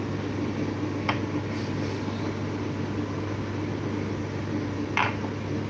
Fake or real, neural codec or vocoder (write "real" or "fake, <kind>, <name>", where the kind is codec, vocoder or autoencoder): real